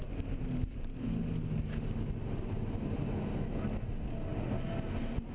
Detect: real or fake real